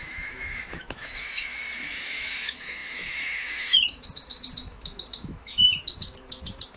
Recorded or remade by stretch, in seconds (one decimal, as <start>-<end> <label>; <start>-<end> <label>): 0.0-6.8 remade